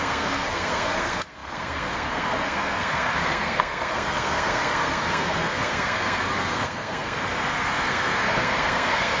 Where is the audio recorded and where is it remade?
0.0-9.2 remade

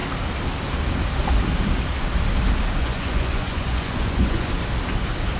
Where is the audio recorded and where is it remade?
0.0-2.8 recorded; 2.8-4.5 remade; 4.5-5.4 recorded

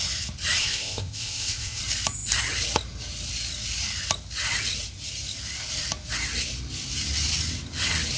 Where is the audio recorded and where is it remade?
0.0-0.6 recorded; 0.6-1.8 remade; 1.8-8.2 recorded

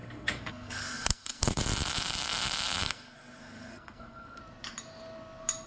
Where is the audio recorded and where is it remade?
0.0-1.6 remade; 1.6-2.8 recorded; 2.8-4.4 remade; 4.4-5.7 recorded

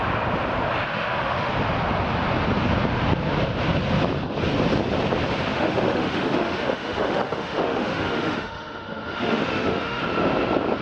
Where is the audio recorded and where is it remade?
0.0-0.9 recorded; 0.9-1.5 remade; 1.5-5.5 recorded; 5.5-10.0 remade; 10.0-10.8 recorded

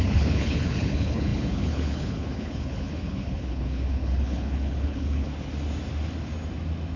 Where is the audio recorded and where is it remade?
0.0-5.3 remade; 5.3-7.0 recorded

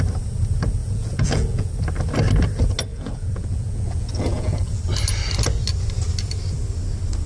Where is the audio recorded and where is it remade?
0.0-0.8 recorded; 0.8-1.7 remade; 1.7-2.9 recorded; 2.9-4.8 remade; 4.8-7.3 recorded

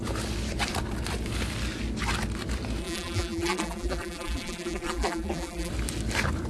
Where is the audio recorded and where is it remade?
0.0-2.8 recorded; 2.8-5.7 remade; 5.7-6.5 recorded